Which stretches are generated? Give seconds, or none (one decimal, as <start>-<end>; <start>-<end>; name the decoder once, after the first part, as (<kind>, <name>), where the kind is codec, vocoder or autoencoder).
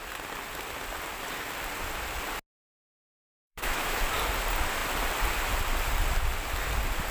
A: 3.0-4.0 (autoencoder, DAC-VAE)